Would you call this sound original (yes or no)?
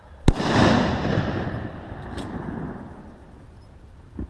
yes